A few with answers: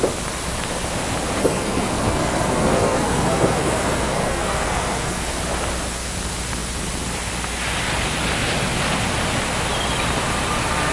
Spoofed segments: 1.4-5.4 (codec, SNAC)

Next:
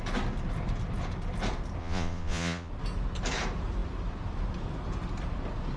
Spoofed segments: 1.8-2.7 (vocoder, Vocos)

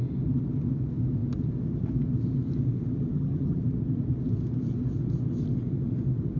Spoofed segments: 3.1-3.6 (vocoder, HiFi-GAN)

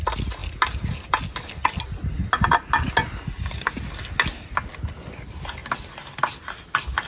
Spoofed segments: none

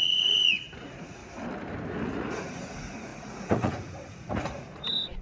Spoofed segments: 0.0-1.2 (vocoder, Vocos); 1.9-5.2

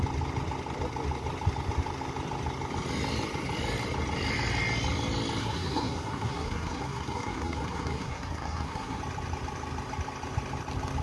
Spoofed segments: 5.4-9.0 (codec, SNAC)

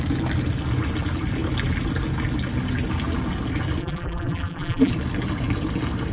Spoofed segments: 3.8-4.9 (vocoder, BigVGAN v2)